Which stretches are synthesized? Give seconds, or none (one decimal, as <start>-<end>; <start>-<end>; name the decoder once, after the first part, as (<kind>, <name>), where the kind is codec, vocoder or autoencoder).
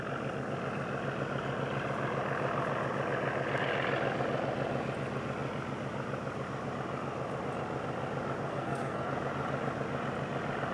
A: 8.5-9.1 (codec, SNAC)